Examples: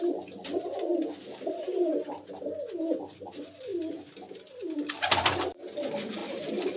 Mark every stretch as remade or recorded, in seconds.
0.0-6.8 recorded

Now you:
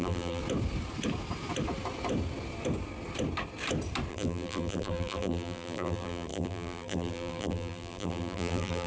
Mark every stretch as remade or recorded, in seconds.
0.0-0.4 remade; 0.4-4.1 recorded; 4.1-8.9 remade